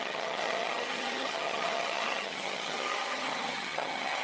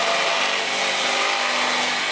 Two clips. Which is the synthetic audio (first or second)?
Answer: first